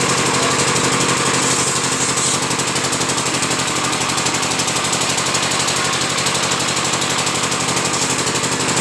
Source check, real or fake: real